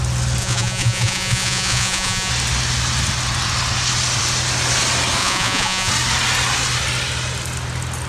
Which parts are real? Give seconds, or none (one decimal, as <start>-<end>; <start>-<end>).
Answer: 0.0-0.4; 2.3-5.2; 5.9-8.1

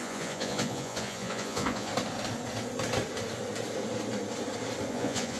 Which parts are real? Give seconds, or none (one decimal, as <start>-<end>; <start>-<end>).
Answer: 1.9-4.9

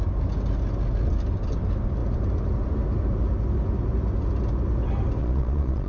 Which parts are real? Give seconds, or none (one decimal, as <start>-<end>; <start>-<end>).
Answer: 0.0-5.2

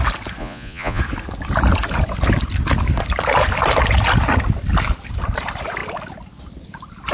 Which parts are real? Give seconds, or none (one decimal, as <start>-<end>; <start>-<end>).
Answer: 0.0-0.4; 1.0-7.1

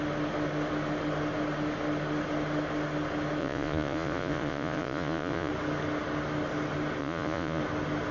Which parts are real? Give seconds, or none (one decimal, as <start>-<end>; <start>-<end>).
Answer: 0.0-3.4; 5.5-7.0; 7.6-8.1

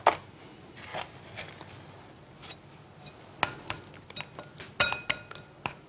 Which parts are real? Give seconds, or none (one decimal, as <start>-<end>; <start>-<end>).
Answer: 0.0-5.9

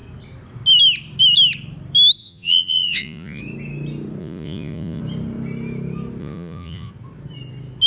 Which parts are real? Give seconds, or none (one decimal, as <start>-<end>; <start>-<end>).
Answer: 0.0-2.2; 3.4-4.2; 5.0-6.2; 6.9-7.9